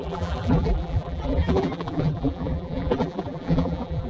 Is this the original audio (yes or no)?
no